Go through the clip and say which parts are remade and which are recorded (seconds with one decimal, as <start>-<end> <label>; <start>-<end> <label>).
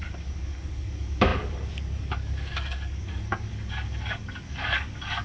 0.0-5.2 remade